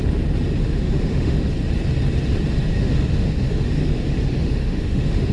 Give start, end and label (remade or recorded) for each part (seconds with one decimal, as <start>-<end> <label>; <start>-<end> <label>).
0.0-0.6 recorded; 0.6-1.4 remade; 1.4-2.7 recorded; 2.7-5.3 remade